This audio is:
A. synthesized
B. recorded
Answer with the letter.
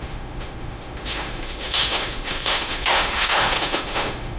A